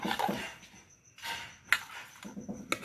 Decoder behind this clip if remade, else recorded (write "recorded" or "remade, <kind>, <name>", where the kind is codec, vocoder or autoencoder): recorded